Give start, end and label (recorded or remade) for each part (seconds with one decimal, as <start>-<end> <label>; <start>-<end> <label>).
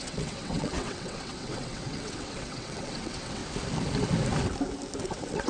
0.0-3.4 remade; 3.4-5.0 recorded; 5.0-5.5 remade